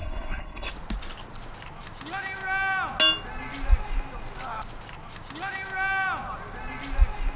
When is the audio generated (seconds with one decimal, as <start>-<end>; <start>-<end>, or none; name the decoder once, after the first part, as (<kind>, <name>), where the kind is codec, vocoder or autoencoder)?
0.0-0.7 (codec, HILCodec)